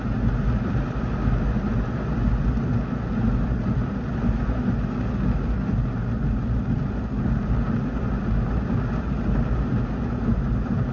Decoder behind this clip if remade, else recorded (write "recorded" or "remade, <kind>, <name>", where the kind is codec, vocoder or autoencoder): recorded